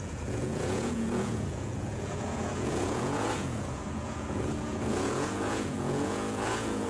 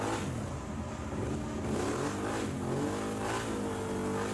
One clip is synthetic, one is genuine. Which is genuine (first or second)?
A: second